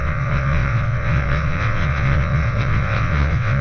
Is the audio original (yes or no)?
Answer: no